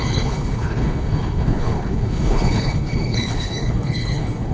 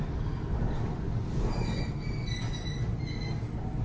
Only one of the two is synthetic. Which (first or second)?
first